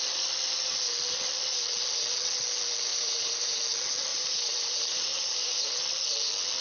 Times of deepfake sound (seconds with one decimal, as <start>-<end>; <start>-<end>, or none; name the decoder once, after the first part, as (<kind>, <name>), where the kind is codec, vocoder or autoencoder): 2.9-3.6 (vocoder, BigVGAN v2); 4.1-5.8